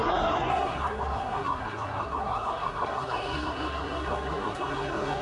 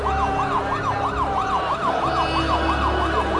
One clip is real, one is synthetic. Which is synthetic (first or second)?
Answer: first